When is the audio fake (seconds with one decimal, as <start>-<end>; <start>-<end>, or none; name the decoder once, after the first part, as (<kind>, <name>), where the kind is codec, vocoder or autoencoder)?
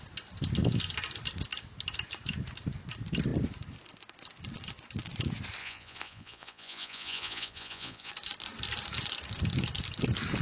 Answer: 5.6-8.1 (vocoder, Vocos)